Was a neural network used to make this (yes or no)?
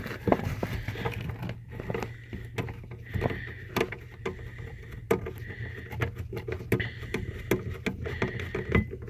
no